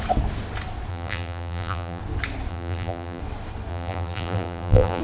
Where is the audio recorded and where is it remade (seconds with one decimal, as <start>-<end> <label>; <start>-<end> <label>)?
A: 0.0-0.9 recorded; 0.9-2.0 remade; 2.0-2.5 recorded; 2.5-3.2 remade; 3.2-3.7 recorded; 3.7-5.0 remade